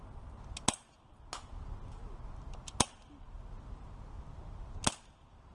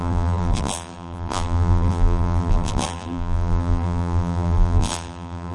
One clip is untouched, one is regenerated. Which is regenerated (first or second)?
second